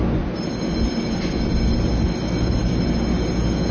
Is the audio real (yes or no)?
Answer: yes